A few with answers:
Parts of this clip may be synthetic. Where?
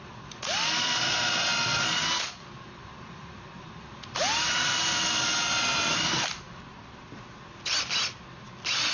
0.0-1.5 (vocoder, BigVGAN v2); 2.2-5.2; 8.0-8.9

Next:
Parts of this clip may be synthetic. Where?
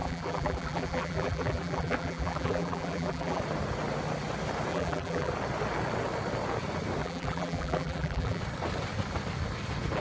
0.0-3.4 (vocoder, BigVGAN v2); 4.7-5.3; 7.0-8.4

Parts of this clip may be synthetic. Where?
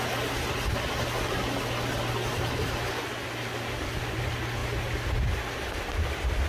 none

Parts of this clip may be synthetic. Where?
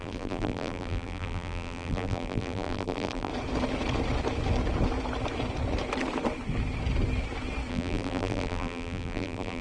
0.0-3.3 (vocoder, BigVGAN v2); 7.7-9.6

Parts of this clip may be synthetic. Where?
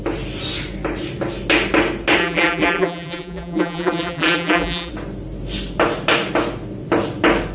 2.2-4.9 (vocoder, BigVGAN v2)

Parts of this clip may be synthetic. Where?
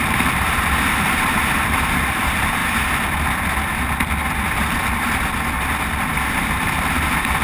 0.0-2.6 (vocoder, BigVGAN v2); 4.5-4.9; 6.4-7.4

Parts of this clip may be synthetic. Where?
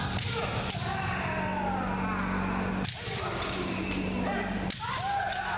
none